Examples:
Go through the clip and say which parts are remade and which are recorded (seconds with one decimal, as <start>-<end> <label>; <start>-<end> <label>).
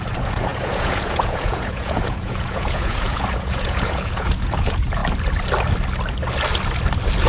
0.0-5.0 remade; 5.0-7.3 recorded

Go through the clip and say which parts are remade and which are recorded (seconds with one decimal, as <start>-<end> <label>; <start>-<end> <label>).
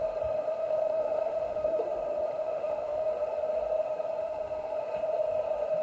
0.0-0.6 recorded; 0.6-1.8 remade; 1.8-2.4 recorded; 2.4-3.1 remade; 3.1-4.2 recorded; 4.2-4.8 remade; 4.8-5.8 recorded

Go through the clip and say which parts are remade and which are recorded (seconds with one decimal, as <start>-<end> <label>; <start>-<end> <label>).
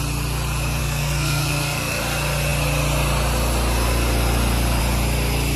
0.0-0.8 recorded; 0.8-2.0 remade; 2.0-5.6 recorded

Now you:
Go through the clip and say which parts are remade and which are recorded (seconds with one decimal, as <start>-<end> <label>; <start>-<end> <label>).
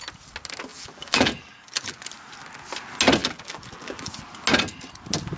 0.0-0.7 recorded; 0.7-2.0 remade; 2.0-3.2 recorded; 3.2-4.2 remade; 4.2-5.4 recorded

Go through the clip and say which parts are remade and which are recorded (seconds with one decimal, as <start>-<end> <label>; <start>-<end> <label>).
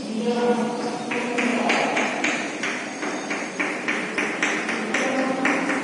0.0-1.5 recorded; 1.5-3.5 remade; 3.5-5.8 recorded